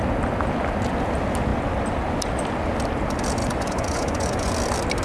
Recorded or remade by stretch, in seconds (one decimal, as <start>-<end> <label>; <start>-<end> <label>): 0.0-3.4 recorded; 3.4-4.5 remade; 4.5-5.0 recorded